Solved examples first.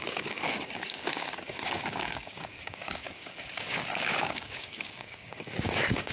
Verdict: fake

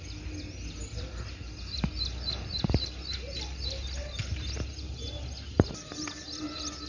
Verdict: real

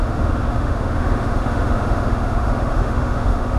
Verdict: fake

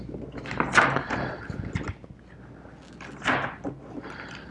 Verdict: real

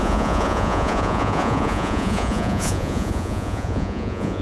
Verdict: fake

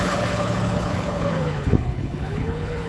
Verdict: fake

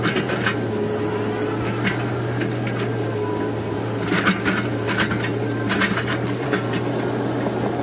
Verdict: real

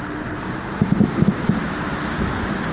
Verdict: real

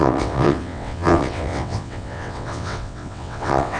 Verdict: fake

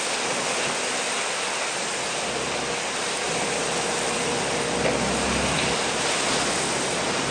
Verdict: real